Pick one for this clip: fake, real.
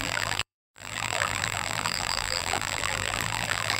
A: fake